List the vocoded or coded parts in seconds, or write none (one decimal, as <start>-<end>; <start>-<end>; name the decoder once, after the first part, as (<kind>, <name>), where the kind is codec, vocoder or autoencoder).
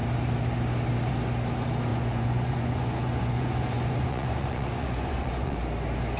1.9-5.6 (vocoder, Vocos)